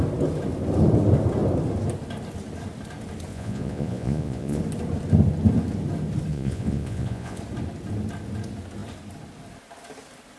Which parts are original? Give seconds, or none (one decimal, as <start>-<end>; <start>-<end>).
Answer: 0.0-3.3; 4.6-6.3; 7.4-10.4